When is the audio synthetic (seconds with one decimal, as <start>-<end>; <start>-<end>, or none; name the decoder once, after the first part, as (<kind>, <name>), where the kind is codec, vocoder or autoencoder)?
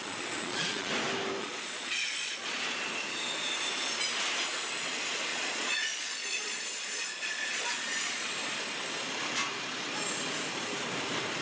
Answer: 0.0-0.9 (vocoder, Vocos); 1.4-2.6; 5.3-8.3